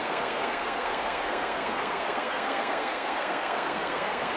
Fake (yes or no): yes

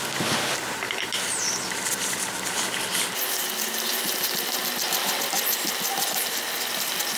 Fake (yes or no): no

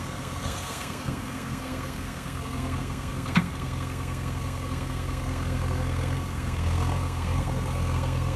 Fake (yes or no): yes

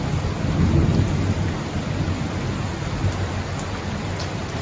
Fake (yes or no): no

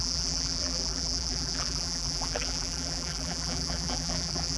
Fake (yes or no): yes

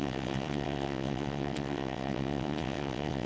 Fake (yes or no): yes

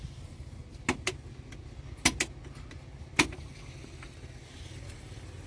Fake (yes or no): no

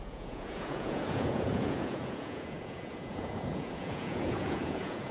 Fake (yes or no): yes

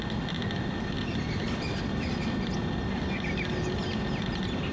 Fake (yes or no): no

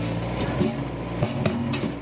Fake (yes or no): no